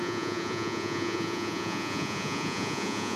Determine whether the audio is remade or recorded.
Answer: remade